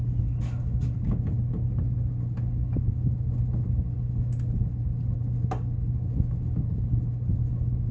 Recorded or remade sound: recorded